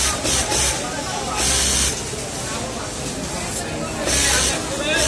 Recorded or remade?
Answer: recorded